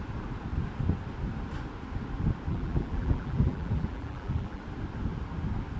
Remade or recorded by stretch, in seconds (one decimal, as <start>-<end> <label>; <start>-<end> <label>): 0.0-2.5 recorded; 2.5-4.6 remade; 4.6-5.8 recorded